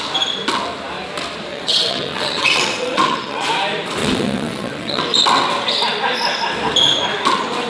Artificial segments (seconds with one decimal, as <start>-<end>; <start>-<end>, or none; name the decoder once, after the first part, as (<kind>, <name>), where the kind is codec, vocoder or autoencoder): 1.5-3.5 (vocoder, WaveNeXt); 4.0-5.0